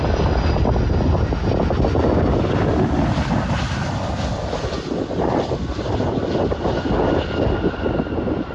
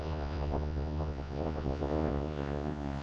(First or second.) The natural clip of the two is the first